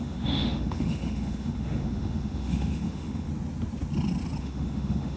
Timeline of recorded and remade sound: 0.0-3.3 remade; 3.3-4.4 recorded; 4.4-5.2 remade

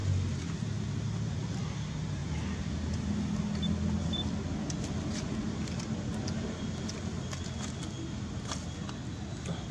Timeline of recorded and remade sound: 0.0-9.7 recorded

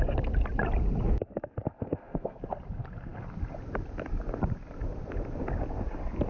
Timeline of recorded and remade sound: 0.0-1.7 recorded; 1.7-2.4 remade; 2.4-6.3 recorded